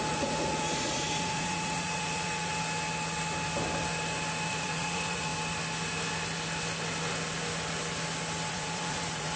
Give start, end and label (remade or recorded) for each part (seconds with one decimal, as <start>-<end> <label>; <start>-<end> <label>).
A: 0.0-2.5 remade; 2.5-4.5 recorded; 4.5-5.3 remade; 5.3-8.5 recorded; 8.5-9.4 remade